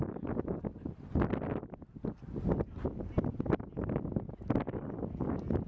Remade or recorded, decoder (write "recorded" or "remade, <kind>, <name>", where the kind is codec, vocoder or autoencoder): recorded